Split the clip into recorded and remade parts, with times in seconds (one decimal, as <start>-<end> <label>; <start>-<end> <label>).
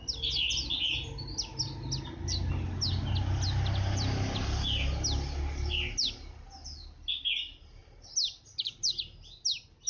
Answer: 0.0-9.9 recorded